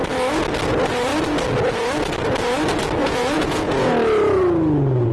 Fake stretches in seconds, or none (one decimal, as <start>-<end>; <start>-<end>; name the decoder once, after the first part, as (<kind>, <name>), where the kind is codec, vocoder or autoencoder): 3.0-3.9 (vocoder, Vocos)